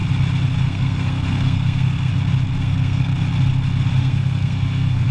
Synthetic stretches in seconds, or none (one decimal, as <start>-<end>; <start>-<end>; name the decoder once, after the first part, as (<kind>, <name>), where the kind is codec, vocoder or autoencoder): 0.6-2.1 (codec, SNAC); 2.6-3.1; 4.0-5.1